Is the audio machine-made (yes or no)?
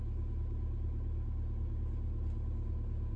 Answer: no